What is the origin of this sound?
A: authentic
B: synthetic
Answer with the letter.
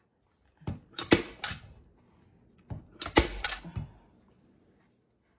A